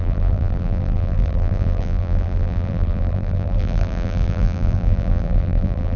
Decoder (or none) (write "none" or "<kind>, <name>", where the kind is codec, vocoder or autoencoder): vocoder, BigVGAN v2